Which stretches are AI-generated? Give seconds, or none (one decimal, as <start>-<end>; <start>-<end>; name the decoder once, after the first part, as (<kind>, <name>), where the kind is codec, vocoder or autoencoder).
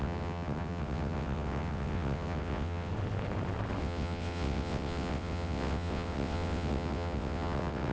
0.0-2.9 (vocoder, WaveNeXt); 3.8-7.9